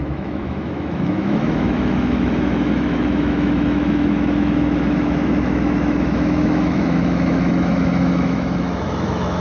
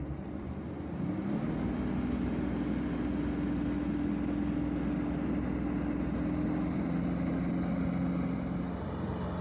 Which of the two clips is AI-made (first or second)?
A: first